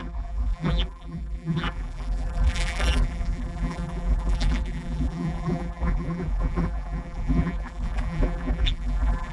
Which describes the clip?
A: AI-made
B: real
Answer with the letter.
A